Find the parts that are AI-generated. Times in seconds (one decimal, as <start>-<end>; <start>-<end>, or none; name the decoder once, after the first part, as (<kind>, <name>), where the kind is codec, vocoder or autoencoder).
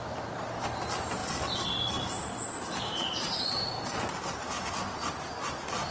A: none